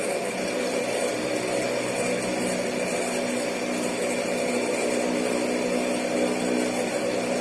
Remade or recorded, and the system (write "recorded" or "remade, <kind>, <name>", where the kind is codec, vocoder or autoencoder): recorded